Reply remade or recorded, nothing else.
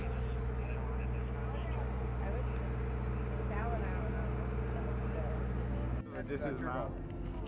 recorded